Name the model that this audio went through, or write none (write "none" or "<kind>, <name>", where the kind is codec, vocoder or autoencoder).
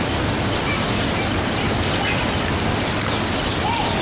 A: none